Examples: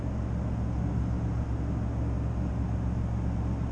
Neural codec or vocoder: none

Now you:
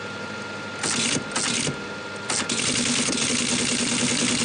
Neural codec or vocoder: none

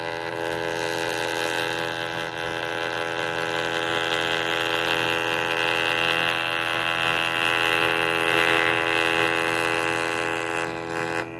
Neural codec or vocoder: none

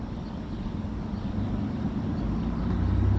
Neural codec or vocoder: none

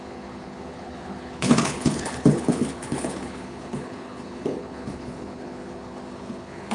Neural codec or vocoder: codec, HILCodec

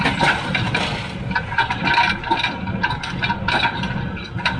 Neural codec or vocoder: none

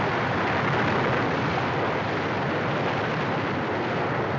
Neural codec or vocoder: none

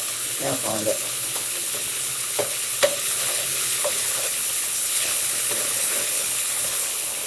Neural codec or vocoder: codec, HILCodec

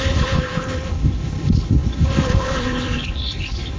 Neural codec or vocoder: codec, HILCodec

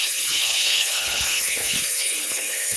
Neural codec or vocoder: codec, HILCodec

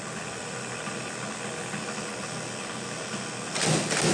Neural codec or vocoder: none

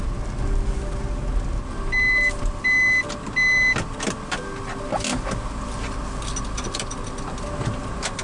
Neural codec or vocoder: none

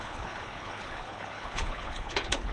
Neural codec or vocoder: codec, HILCodec